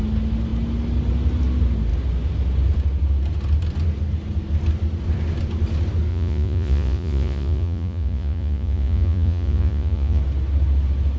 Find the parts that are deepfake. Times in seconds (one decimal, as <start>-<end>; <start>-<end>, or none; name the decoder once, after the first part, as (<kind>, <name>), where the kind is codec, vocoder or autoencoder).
6.1-10.2 (vocoder, Vocos)